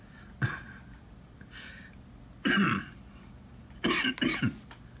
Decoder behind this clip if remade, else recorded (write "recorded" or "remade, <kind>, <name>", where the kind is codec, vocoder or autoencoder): recorded